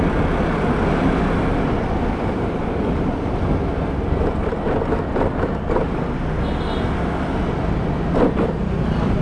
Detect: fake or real real